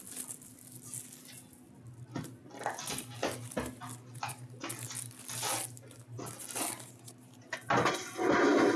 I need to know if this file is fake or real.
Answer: real